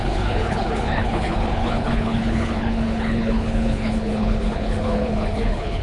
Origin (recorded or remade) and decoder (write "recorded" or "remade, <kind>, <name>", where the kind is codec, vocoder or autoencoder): remade, codec, HILCodec